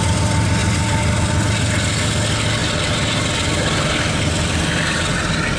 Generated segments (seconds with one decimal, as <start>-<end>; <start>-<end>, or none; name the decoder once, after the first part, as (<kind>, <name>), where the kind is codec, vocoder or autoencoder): none